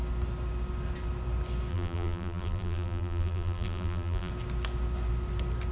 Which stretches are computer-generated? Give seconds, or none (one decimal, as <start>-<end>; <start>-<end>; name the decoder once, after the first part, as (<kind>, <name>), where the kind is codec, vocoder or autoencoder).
1.7-4.3 (vocoder, BigVGAN v2)